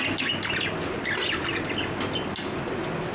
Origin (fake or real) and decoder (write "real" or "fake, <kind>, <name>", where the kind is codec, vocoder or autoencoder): real